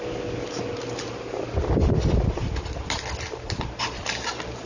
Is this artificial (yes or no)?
no